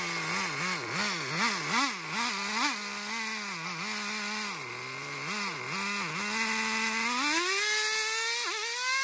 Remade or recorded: recorded